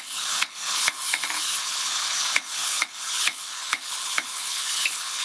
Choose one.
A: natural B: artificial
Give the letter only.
B